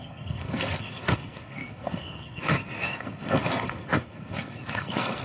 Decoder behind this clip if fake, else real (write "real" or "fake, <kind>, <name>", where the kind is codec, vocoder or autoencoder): fake, codec, SNAC